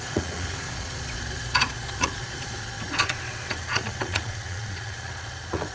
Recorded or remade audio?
remade